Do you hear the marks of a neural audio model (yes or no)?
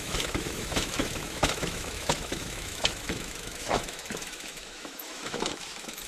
yes